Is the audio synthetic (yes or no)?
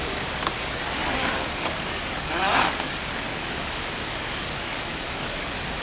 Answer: yes